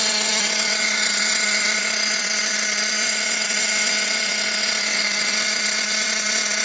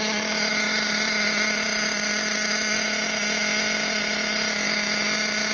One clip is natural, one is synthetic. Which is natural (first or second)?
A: second